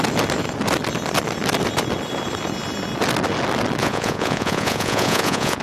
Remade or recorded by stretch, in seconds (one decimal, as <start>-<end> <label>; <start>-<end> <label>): 0.0-3.8 recorded; 3.8-5.6 remade